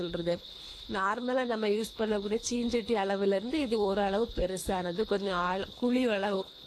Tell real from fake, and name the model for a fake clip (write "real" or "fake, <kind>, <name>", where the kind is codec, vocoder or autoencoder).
fake, codec, HILCodec